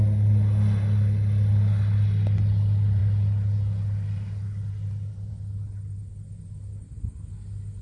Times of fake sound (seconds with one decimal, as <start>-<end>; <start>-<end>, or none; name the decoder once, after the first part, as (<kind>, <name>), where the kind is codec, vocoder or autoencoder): none